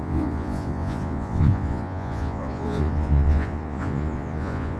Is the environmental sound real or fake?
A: fake